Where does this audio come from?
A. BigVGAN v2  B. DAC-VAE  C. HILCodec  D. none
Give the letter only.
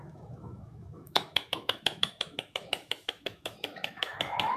B